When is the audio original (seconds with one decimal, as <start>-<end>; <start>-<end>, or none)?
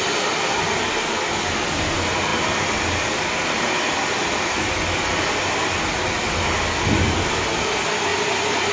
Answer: 0.0-8.7